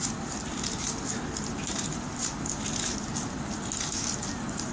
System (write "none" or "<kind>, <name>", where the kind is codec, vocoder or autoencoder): none